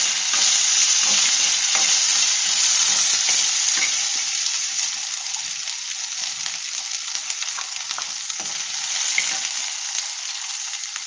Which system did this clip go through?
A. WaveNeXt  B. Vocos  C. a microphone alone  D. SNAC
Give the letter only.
C